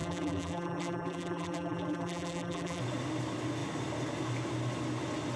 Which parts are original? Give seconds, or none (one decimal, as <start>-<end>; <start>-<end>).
2.8-5.4